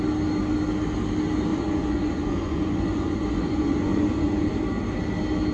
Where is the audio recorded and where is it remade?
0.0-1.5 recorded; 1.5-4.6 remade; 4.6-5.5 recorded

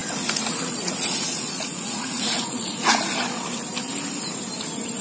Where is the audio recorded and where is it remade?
0.0-3.0 remade; 3.0-5.0 recorded